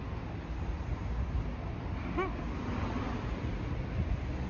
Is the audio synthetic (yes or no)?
no